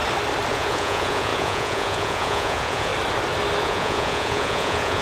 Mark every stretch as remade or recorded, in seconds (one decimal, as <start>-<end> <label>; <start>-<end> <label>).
0.0-0.5 recorded; 0.5-2.9 remade; 2.9-3.6 recorded; 3.6-5.0 remade